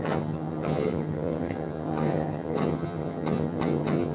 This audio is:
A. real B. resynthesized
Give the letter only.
B